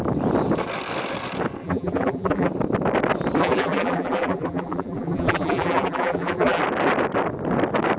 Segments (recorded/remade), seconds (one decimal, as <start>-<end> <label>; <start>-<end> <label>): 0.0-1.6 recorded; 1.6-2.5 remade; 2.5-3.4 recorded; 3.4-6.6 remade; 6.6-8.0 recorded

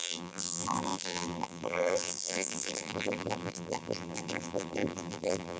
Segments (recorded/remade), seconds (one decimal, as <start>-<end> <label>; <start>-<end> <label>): 0.0-5.6 remade

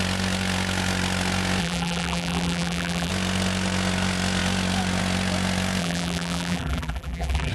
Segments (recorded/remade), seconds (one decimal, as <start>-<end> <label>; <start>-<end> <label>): 0.0-1.6 recorded; 1.6-3.1 remade; 3.1-5.8 recorded; 5.8-7.5 remade

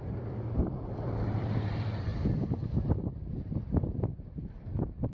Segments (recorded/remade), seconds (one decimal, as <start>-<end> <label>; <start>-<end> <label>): 0.0-2.1 remade; 2.1-3.9 recorded; 3.9-5.1 remade

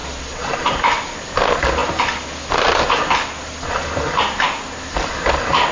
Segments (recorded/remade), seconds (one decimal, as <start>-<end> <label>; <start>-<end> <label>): 0.0-0.7 remade; 0.7-5.7 recorded